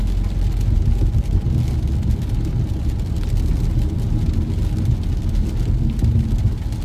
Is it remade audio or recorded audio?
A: recorded